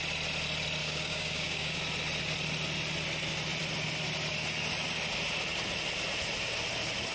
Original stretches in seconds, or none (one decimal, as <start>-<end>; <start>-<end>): 0.0-0.8; 1.8-7.1